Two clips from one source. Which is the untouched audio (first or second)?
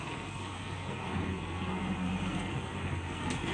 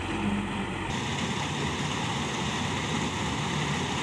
second